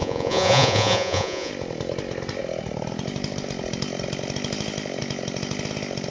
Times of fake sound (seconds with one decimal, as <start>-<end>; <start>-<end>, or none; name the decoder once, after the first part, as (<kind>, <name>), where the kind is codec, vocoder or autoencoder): 0.0-1.5 (vocoder, Vocos)